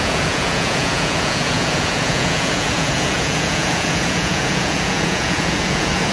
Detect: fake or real fake